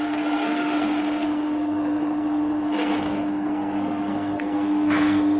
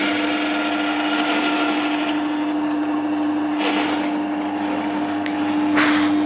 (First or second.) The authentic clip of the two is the second